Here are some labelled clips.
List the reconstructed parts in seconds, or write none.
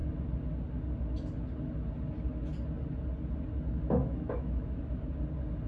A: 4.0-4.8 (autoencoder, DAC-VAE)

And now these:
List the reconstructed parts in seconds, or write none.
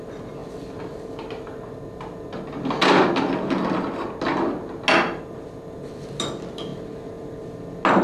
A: none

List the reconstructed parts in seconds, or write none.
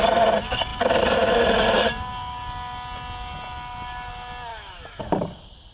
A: 4.5-5.0 (autoencoder, DAC-VAE)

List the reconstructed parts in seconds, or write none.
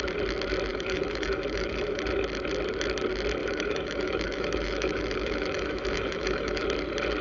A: 0.7-2.0 (autoencoder, DAC-VAE); 3.4-6.6